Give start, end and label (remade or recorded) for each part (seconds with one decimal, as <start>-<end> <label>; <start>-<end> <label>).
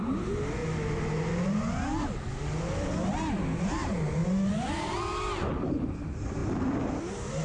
0.0-0.6 remade; 0.6-3.6 recorded; 3.6-4.2 remade; 4.2-4.7 recorded; 4.7-7.4 remade